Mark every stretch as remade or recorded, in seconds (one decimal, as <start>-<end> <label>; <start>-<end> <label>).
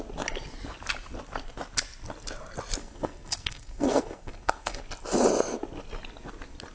0.0-2.8 recorded; 2.8-4.8 remade; 4.8-6.7 recorded